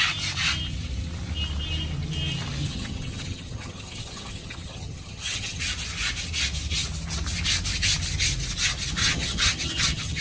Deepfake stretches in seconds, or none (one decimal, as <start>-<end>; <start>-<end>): 2.6-5.6; 9.0-10.2